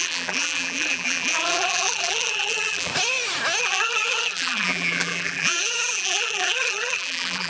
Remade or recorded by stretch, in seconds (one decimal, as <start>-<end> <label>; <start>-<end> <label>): 0.0-2.9 remade; 2.9-3.6 recorded; 3.6-7.5 remade